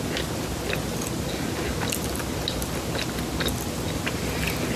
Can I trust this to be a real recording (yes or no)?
yes